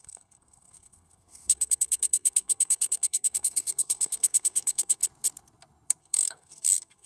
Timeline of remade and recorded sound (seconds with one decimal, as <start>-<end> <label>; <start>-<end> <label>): 0.0-5.0 remade; 5.0-6.0 recorded; 6.0-7.1 remade